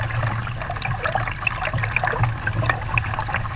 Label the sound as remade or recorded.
recorded